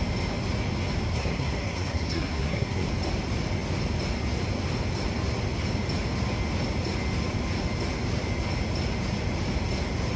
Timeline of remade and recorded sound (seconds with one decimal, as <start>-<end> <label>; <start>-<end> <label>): 0.0-1.1 recorded; 1.1-2.9 remade; 2.9-10.2 recorded